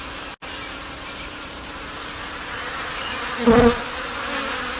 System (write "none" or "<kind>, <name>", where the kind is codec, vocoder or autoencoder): none